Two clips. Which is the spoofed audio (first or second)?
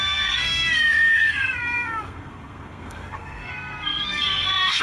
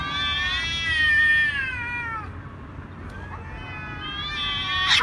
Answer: first